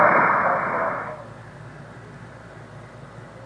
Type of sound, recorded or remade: recorded